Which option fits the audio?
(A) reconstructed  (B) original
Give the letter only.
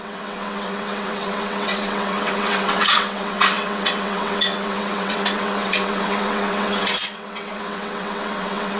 A